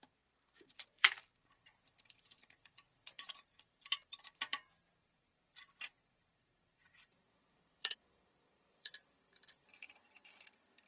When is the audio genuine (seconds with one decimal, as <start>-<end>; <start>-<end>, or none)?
none